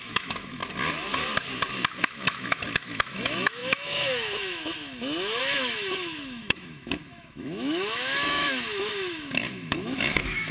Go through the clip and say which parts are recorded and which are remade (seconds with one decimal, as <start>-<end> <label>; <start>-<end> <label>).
0.0-0.6 remade; 0.6-2.0 recorded; 2.0-10.5 remade